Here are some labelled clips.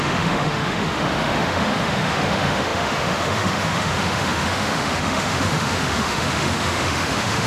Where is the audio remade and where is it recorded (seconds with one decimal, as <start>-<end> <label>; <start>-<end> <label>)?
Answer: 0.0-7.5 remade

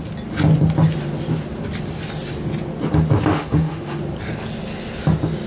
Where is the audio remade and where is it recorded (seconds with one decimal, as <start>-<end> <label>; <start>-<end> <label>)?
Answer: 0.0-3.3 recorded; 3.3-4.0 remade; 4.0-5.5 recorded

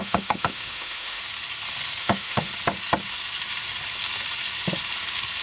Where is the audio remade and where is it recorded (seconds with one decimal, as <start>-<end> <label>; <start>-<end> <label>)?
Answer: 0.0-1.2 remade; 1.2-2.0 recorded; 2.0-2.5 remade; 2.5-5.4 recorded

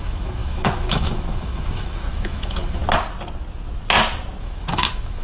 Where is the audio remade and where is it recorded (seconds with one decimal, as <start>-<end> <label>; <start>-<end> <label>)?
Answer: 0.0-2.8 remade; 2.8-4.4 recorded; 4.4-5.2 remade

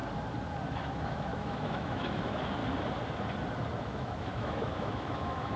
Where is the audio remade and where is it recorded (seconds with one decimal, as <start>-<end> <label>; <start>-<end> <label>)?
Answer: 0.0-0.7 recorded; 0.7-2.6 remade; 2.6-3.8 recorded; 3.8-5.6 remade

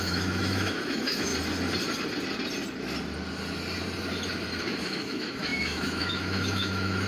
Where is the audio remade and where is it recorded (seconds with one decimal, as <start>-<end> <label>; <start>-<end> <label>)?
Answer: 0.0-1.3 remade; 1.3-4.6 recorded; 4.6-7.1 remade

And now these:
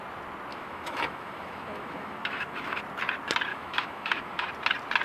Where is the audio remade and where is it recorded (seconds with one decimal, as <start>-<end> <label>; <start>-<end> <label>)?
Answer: 0.0-0.5 recorded; 0.5-2.8 remade; 2.8-3.5 recorded; 3.5-4.5 remade; 4.5-5.0 recorded

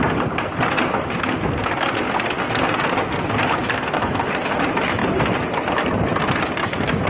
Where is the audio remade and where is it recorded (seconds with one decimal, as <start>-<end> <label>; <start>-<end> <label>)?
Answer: 0.0-7.1 recorded